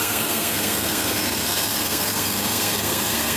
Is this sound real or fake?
fake